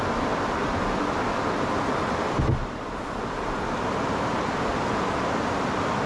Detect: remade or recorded recorded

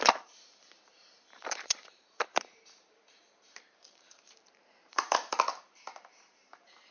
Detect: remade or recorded remade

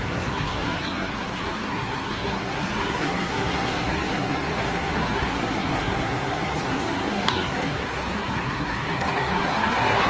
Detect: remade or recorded remade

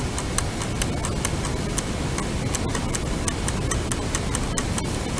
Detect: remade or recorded recorded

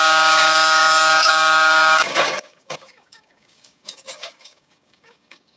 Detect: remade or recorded remade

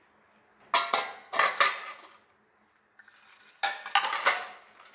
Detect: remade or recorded recorded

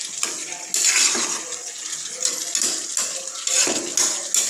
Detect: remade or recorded recorded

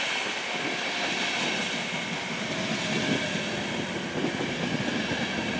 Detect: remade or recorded recorded